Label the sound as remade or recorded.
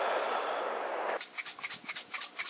recorded